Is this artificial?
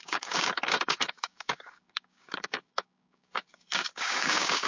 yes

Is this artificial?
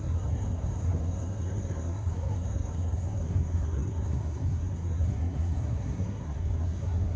yes